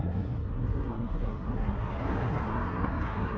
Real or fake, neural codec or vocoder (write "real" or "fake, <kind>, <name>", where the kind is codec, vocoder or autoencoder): fake, codec, SNAC